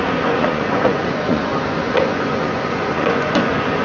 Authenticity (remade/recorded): remade